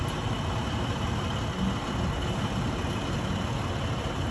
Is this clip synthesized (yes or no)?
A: no